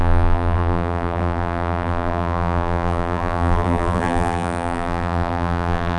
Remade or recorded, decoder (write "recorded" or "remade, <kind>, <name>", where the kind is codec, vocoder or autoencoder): remade, vocoder, BigVGAN v2